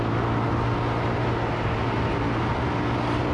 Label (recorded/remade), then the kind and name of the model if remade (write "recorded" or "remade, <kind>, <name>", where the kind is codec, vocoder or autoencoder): recorded